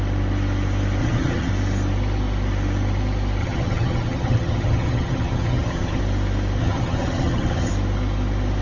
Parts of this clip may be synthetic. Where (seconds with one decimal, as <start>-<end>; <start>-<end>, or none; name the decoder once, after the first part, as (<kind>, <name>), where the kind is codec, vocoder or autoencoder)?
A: 1.0-1.5 (vocoder, HiFi-GAN); 3.4-6.0; 6.6-7.7